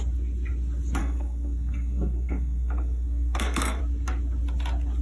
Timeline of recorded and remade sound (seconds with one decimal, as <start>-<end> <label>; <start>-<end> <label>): 0.0-1.0 recorded; 1.0-3.8 remade; 3.8-5.0 recorded